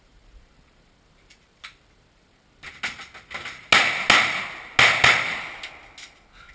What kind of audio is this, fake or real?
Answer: real